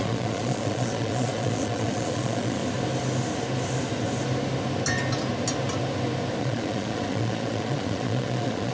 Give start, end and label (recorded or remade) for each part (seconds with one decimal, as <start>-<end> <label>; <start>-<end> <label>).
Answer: 0.0-2.6 remade; 2.6-6.4 recorded; 6.4-8.7 remade